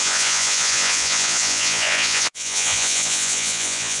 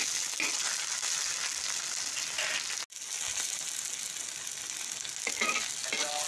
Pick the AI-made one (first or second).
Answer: first